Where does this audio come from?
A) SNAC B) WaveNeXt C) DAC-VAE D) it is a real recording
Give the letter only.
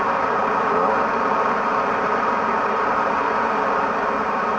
D